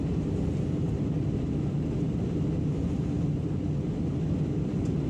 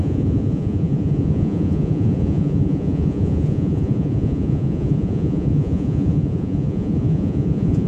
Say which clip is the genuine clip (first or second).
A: first